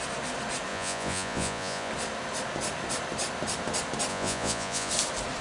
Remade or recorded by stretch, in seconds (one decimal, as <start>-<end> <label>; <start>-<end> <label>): 0.0-0.7 recorded; 0.7-1.9 remade; 1.9-4.1 recorded; 4.1-4.9 remade; 4.9-5.4 recorded